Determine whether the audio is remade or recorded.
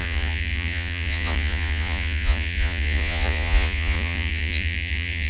remade